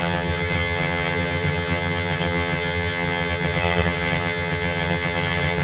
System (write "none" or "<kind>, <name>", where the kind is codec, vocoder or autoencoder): vocoder, HiFi-GAN